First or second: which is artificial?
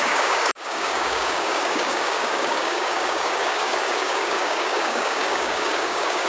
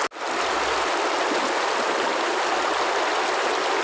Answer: first